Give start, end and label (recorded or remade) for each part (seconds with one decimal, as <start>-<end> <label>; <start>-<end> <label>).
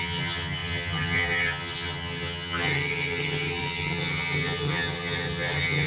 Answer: 0.0-5.9 remade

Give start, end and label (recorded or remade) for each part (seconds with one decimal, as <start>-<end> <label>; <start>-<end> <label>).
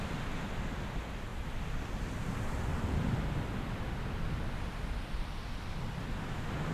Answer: 0.0-6.7 recorded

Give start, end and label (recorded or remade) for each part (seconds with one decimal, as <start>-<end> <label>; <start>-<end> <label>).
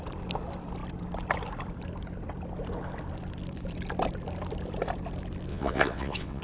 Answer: 0.0-5.5 recorded; 5.5-6.4 remade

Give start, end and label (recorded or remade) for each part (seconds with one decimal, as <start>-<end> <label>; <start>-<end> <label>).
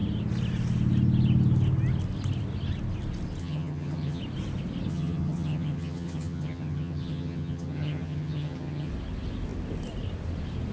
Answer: 0.0-3.4 recorded; 3.4-4.2 remade; 4.2-4.9 recorded; 4.9-8.9 remade; 8.9-10.7 recorded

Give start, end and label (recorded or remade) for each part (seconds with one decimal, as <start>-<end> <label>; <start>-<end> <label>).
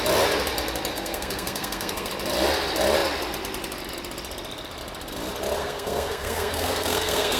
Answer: 0.0-0.9 recorded; 0.9-2.1 remade; 2.1-5.6 recorded; 5.6-7.4 remade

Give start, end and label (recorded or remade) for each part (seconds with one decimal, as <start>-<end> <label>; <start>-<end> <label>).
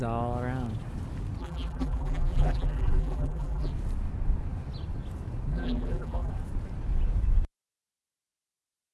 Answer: 0.0-1.4 recorded; 1.4-3.7 remade; 3.7-5.5 recorded; 5.5-6.3 remade; 6.3-8.9 recorded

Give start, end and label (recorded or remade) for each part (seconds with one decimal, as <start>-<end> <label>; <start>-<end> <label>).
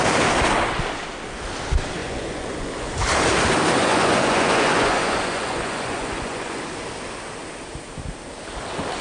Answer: 0.0-2.0 recorded; 2.0-2.7 remade; 2.7-3.8 recorded; 3.8-6.6 remade; 6.6-9.0 recorded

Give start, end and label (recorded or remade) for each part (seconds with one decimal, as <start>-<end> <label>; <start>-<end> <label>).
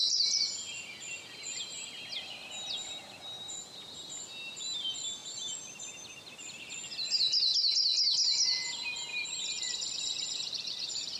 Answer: 0.0-0.8 remade; 0.8-5.2 recorded; 5.2-5.8 remade; 5.8-9.1 recorded; 9.1-11.2 remade